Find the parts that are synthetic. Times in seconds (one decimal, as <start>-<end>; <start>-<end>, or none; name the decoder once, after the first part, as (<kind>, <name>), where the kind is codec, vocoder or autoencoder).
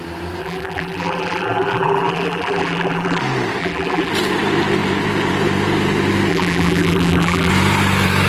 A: 0.4-3.2 (vocoder, BigVGAN v2); 3.6-4.1; 6.3-7.5